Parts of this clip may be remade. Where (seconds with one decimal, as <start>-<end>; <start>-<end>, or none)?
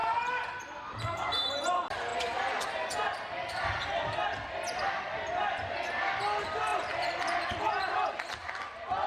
6.7-7.7; 8.4-9.1